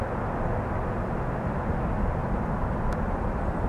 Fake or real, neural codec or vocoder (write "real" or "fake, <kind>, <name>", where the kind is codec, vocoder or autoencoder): real